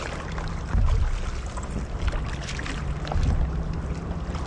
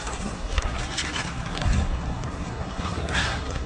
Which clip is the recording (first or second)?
first